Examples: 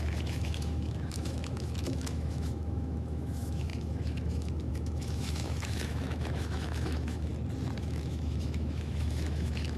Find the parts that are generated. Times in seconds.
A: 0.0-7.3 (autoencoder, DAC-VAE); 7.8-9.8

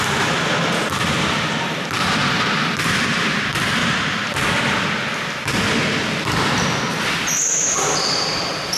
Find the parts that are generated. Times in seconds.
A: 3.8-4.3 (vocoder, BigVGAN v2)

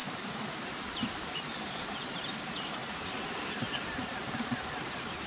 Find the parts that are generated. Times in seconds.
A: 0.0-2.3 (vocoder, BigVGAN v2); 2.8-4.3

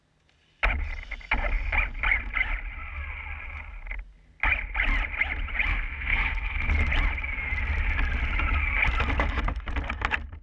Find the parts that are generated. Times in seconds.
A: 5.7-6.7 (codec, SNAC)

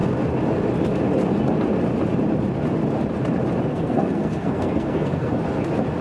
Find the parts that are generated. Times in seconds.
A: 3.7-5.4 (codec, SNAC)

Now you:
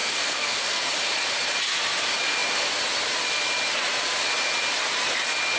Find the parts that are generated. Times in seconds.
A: 0.0-0.9 (codec, SNAC)

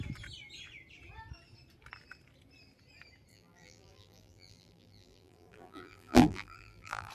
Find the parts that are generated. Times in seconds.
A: 3.3-7.1 (vocoder, BigVGAN v2)